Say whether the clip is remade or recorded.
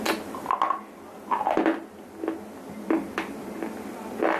recorded